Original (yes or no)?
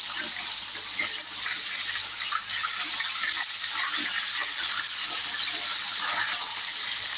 yes